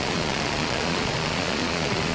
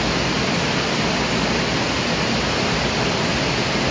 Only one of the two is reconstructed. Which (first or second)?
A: first